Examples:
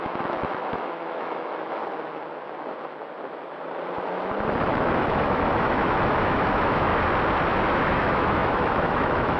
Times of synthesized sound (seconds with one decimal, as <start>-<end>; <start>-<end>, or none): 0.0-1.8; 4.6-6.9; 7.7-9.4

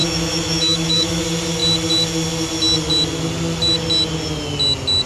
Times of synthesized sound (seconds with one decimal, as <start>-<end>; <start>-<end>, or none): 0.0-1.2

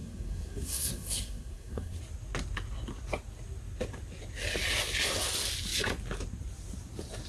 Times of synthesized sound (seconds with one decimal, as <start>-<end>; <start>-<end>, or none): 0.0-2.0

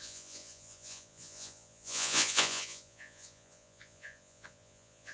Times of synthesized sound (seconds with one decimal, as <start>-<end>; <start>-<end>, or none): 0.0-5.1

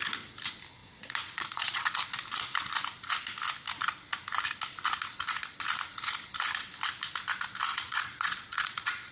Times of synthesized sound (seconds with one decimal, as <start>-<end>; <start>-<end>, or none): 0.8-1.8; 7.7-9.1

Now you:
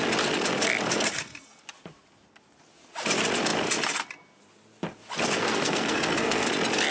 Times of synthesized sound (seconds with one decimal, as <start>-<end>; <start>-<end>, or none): 5.4-6.5

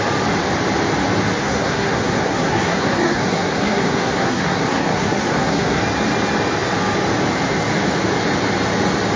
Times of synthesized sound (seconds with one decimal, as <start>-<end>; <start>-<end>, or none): 1.4-5.8